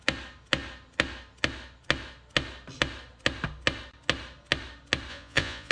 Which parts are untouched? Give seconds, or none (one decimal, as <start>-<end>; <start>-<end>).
0.0-5.1